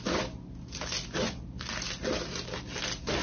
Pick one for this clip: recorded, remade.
recorded